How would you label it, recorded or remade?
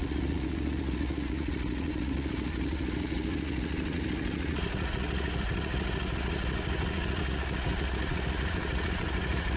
remade